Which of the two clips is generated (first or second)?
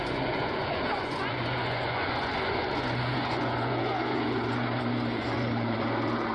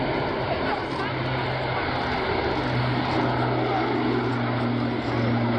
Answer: first